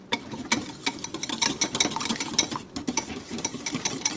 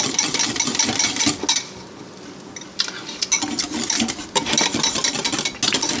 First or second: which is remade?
first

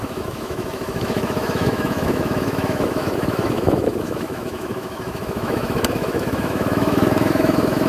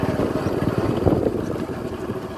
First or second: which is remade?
first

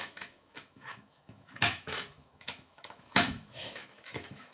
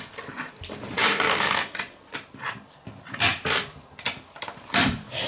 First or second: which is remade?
first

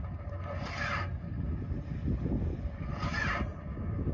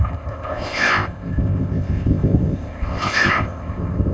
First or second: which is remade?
second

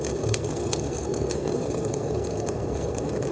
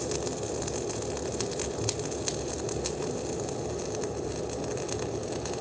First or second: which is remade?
first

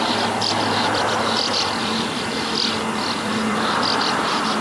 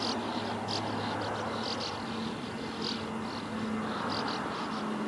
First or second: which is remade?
first